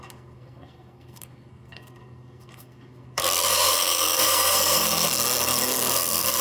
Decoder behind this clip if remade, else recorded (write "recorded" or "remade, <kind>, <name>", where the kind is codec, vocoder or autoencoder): remade, codec, SNAC